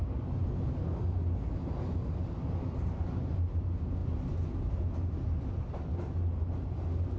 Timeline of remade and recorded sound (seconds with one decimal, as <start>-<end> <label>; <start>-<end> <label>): 0.0-7.2 recorded